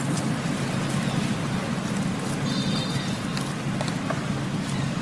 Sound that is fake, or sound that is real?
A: real